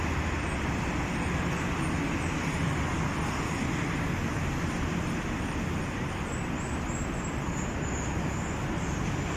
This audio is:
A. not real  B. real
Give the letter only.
B